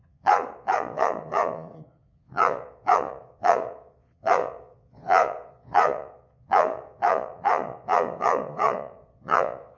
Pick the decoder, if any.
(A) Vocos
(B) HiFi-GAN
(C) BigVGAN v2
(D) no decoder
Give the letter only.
A